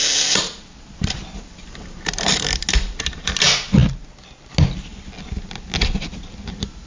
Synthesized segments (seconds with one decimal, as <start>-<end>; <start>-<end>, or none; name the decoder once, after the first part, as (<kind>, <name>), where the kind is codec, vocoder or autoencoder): none